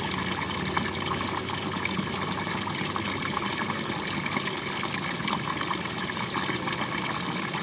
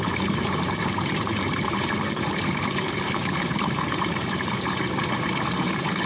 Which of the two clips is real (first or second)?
first